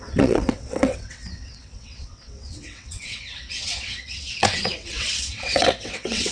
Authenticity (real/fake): fake